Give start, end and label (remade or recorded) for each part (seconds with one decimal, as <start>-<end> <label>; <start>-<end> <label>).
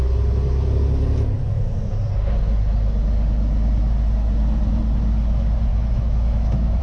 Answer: 0.0-5.7 recorded; 5.7-6.8 remade